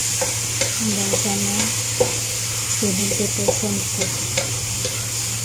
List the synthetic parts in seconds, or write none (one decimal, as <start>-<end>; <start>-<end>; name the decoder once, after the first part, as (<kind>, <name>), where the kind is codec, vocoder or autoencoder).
3.9-4.6 (vocoder, BigVGAN v2)